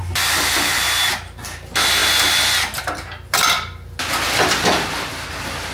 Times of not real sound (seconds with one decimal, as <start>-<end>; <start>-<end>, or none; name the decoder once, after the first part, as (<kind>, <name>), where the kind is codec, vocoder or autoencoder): none